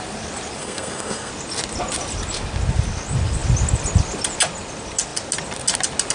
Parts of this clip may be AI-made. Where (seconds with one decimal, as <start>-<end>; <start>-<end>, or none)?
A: 0.6-1.3